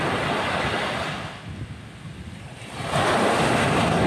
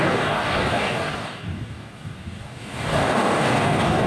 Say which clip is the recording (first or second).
first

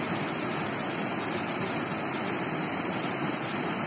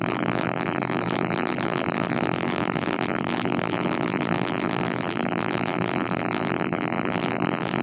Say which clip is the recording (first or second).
first